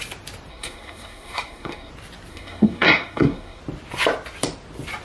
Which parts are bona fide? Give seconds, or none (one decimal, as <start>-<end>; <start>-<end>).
0.0-0.5; 1.9-2.3; 3.6-5.0